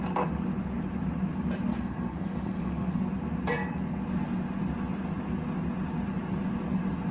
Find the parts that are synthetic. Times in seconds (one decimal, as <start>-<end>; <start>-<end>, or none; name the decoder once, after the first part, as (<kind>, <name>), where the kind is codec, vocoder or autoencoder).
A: 1.7-3.0 (codec, SNAC)